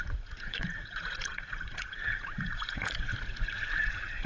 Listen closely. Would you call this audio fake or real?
fake